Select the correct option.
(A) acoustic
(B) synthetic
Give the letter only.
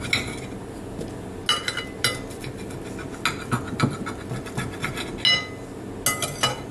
A